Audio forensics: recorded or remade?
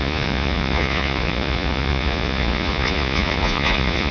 remade